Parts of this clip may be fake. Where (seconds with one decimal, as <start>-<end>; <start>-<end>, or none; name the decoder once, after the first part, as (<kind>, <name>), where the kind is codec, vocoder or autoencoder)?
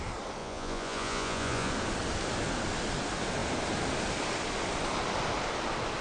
0.4-1.7 (vocoder, Vocos)